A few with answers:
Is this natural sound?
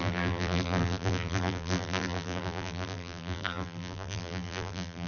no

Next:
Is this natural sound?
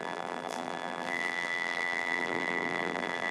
no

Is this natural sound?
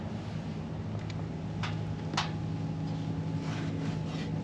yes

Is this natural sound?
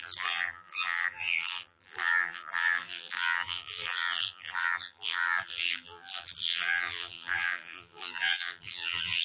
no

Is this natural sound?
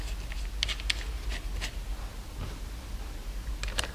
yes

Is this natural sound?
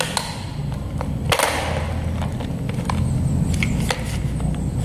yes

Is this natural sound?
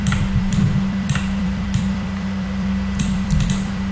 no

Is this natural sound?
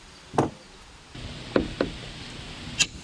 yes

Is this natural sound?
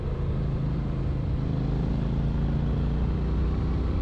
yes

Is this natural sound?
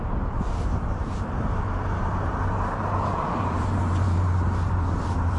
no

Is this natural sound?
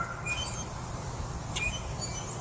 yes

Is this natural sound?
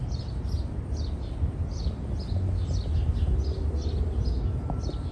yes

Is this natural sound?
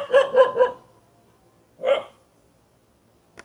yes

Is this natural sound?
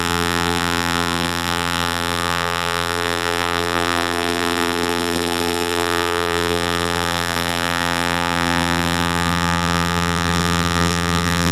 no